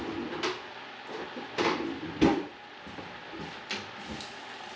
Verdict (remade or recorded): recorded